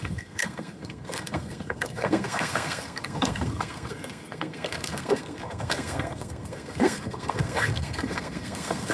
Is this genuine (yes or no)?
no